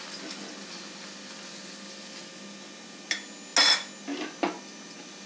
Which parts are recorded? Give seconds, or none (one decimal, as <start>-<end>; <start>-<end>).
0.0-5.3